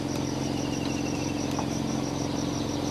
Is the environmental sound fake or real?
real